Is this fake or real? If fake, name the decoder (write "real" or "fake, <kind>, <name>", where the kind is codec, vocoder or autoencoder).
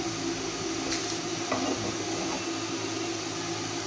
real